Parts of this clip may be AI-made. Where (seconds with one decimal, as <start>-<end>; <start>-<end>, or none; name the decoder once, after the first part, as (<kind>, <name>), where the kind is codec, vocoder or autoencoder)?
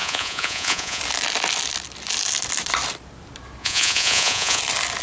0.0-1.0 (vocoder, Vocos); 3.6-4.6